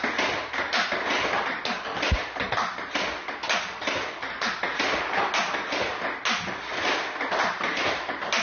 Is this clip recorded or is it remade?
recorded